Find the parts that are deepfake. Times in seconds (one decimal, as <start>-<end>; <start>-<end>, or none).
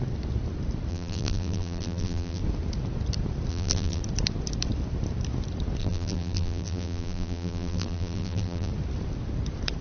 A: 0.9-2.4; 3.5-4.0; 5.8-8.7